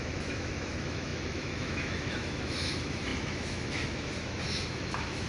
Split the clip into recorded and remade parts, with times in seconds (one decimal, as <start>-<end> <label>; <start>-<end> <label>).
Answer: 0.0-5.3 remade

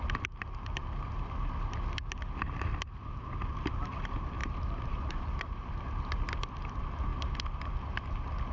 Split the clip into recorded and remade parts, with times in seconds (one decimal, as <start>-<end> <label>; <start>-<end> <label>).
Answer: 0.0-4.4 recorded; 4.4-5.7 remade; 5.7-8.5 recorded

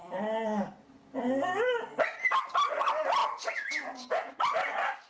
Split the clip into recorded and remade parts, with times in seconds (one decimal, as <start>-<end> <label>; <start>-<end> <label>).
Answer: 0.0-3.2 recorded; 3.2-4.3 remade; 4.3-5.1 recorded

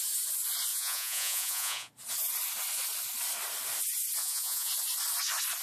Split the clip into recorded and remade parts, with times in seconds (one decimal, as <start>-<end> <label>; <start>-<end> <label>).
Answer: 0.0-0.7 recorded; 0.7-1.9 remade; 1.9-4.2 recorded; 4.2-4.7 remade; 4.7-5.6 recorded

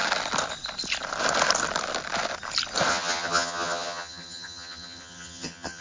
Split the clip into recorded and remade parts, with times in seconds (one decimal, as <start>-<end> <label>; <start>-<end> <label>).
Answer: 0.0-2.9 recorded; 2.9-5.8 remade

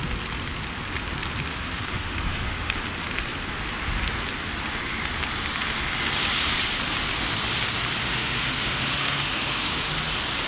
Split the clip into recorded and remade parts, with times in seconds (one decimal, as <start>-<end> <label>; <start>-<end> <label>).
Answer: 0.0-1.5 recorded; 1.5-2.7 remade; 2.7-8.0 recorded; 8.0-9.9 remade; 9.9-10.5 recorded

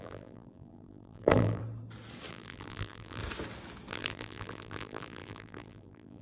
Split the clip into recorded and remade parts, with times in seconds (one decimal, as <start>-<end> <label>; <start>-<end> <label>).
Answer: 0.0-1.6 remade; 1.6-2.3 recorded; 2.3-3.2 remade; 3.2-3.9 recorded; 3.9-6.2 remade

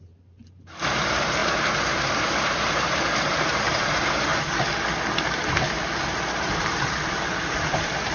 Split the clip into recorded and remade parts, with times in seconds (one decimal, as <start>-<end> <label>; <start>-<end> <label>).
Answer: 0.0-4.3 remade; 4.3-6.3 recorded; 6.3-8.1 remade